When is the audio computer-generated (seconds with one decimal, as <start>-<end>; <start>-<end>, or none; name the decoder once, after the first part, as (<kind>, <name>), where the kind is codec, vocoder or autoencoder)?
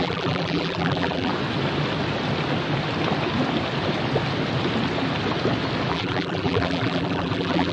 0.0-1.3 (vocoder, BigVGAN v2); 5.9-7.7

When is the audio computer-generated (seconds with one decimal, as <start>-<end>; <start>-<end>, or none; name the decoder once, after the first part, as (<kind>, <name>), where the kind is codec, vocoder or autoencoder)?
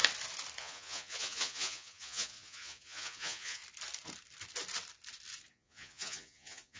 0.6-3.6 (vocoder, Vocos); 5.5-6.8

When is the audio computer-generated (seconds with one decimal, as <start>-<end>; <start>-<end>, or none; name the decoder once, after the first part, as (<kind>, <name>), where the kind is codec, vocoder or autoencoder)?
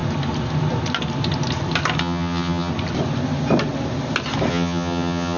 2.0-2.7 (vocoder, HiFi-GAN); 4.5-5.4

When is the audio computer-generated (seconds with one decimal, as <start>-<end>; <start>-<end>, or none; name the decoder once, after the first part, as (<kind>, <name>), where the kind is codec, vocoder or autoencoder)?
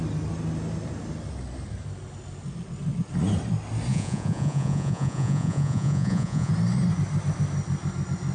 3.9-6.5 (vocoder, Vocos)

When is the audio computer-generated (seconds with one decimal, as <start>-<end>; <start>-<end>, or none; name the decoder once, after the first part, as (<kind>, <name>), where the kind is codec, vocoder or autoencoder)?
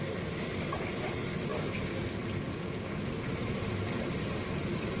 0.0-1.5 (vocoder, BigVGAN v2); 2.6-5.0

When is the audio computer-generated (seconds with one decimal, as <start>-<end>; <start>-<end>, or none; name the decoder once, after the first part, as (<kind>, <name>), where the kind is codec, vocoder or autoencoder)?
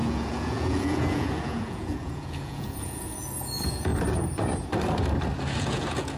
0.0-3.9 (vocoder, Vocos); 5.6-6.2